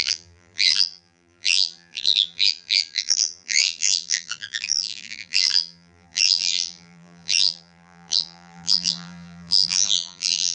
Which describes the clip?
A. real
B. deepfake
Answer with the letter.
B